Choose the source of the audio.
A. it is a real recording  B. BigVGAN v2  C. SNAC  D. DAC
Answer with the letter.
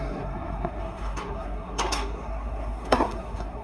C